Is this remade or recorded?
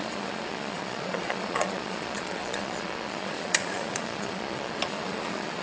remade